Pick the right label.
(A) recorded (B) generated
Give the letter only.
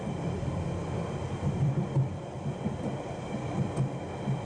A